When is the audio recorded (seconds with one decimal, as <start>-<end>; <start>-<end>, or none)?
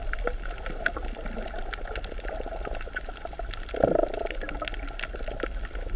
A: 0.0-6.0